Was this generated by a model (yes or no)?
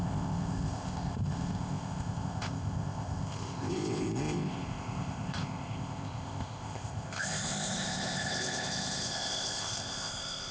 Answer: yes